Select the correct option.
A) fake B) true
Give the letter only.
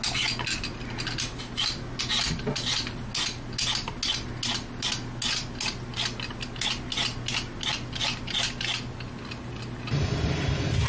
B